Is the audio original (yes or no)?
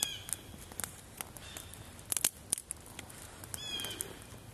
yes